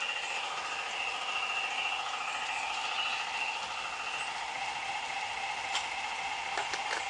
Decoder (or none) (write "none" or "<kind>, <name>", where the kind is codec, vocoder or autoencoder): none